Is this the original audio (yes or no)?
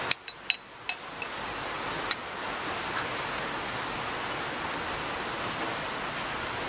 yes